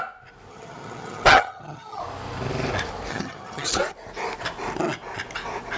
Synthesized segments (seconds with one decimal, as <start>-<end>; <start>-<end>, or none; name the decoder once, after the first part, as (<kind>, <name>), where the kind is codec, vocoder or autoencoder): 0.5-2.0 (vocoder, HiFi-GAN); 3.1-3.7